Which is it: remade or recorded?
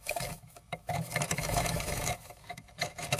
remade